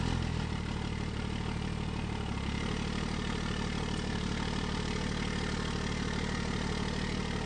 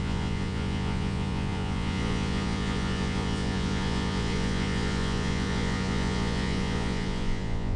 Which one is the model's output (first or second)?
second